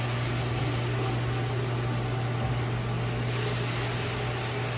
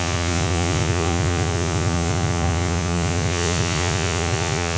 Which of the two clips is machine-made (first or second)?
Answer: second